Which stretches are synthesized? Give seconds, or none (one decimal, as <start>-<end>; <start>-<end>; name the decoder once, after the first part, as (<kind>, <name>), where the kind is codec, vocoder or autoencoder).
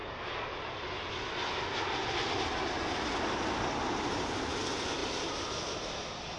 none